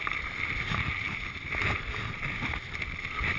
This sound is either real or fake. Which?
real